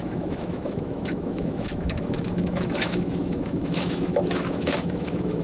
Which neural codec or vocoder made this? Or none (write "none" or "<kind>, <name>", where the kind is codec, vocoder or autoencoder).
autoencoder, DAC-VAE